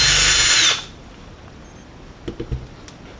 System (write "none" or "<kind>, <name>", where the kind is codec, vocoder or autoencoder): none